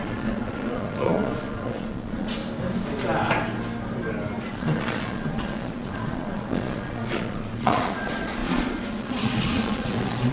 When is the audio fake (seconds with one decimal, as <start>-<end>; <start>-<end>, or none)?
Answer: 0.0-2.4; 4.5-10.3

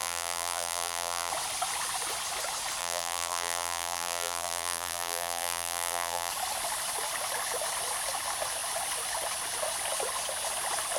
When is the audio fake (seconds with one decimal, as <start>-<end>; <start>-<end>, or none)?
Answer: 0.0-1.3; 2.8-6.3

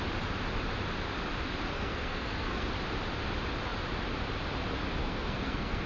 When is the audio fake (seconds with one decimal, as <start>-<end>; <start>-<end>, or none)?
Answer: 1.7-2.7; 5.0-5.9

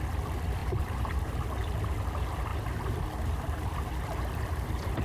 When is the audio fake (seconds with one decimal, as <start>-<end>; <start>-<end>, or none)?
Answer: 0.6-1.4

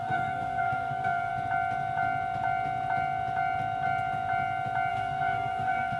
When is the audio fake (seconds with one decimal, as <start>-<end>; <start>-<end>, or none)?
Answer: 0.0-1.3; 4.9-6.0

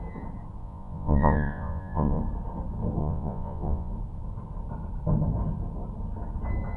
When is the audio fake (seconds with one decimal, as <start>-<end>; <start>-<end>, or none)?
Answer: 0.6-2.2; 3.0-3.9